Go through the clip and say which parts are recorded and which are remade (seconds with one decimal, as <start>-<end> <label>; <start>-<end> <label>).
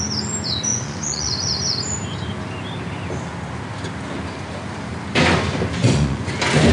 0.0-0.7 recorded; 0.7-1.6 remade; 1.6-5.8 recorded; 5.8-6.3 remade; 6.3-6.7 recorded